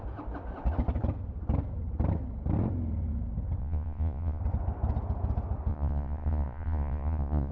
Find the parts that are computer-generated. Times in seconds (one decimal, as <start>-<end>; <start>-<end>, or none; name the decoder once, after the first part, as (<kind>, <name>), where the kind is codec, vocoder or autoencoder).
3.6-4.4 (vocoder, Vocos); 5.7-7.5